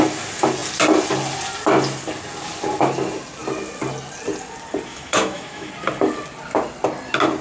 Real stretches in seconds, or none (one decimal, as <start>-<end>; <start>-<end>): 0.0-4.9; 5.7-7.4